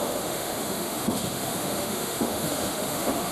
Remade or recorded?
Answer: remade